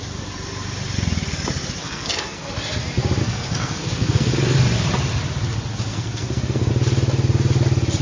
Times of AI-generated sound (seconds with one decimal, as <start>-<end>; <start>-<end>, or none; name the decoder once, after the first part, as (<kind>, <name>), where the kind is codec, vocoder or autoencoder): 1.8-2.5 (codec, SNAC); 3.2-4.3; 5.9-6.7